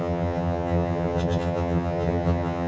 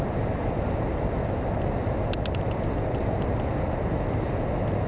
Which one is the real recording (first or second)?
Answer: second